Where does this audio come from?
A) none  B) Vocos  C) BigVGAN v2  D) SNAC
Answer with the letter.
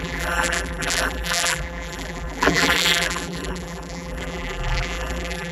C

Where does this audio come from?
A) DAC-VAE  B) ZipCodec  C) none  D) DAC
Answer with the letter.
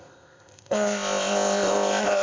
B